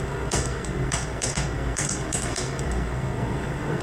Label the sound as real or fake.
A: fake